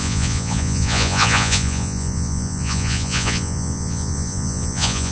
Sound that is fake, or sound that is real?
fake